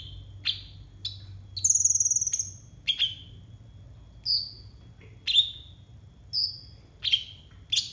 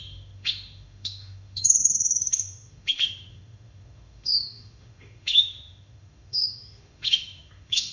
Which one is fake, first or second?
second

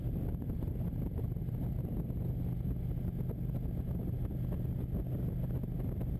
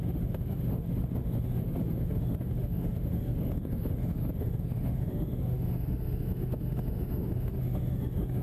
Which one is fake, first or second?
second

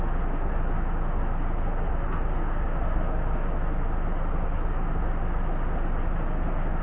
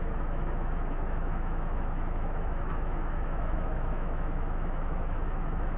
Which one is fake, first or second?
second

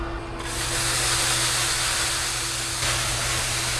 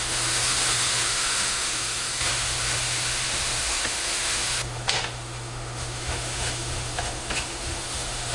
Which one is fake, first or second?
second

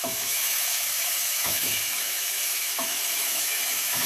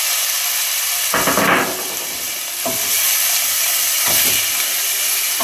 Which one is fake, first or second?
first